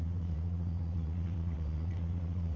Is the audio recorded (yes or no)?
no